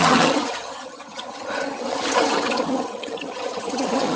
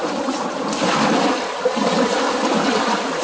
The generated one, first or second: first